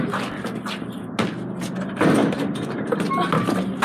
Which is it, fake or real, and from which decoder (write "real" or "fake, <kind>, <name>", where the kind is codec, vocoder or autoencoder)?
real